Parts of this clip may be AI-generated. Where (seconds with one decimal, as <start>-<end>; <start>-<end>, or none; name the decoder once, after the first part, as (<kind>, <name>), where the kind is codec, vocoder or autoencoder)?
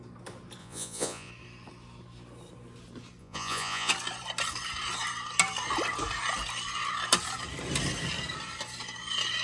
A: 0.6-1.3 (vocoder, Vocos); 3.2-3.9